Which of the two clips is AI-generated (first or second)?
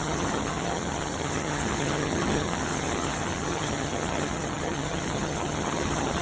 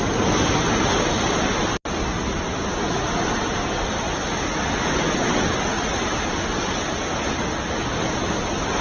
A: first